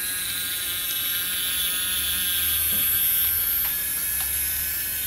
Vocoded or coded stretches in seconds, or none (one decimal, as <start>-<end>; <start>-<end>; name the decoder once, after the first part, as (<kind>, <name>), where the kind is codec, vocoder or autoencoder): 3.9-5.1 (vocoder, BigVGAN v2)